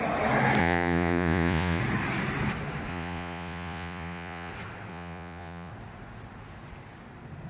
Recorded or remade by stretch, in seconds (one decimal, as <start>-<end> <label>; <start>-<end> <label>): 0.0-0.6 recorded; 0.6-1.8 remade; 1.8-2.9 recorded; 2.9-4.5 remade; 4.5-4.9 recorded; 4.9-5.7 remade; 5.7-7.5 recorded